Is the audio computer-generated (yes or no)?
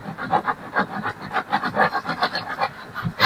no